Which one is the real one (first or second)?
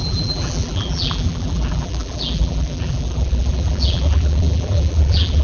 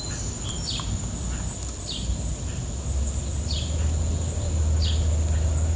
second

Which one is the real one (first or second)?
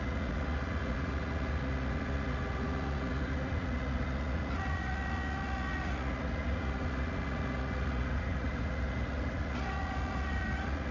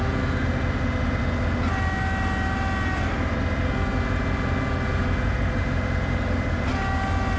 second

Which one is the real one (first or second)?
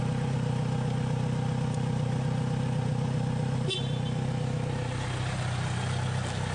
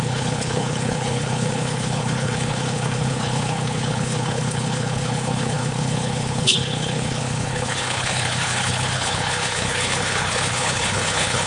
first